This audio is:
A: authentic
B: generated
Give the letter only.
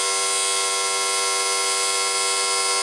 A